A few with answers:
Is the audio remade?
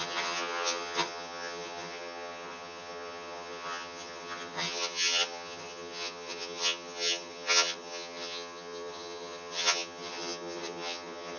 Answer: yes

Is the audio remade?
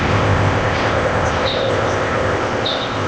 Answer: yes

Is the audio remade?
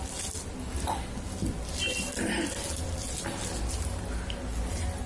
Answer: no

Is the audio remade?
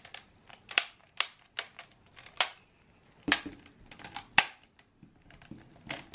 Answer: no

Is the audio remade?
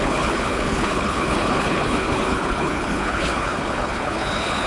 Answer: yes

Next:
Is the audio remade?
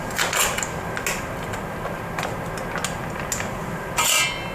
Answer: no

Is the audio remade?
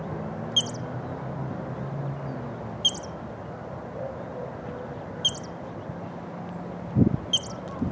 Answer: no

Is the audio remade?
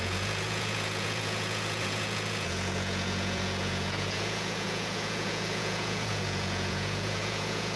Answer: yes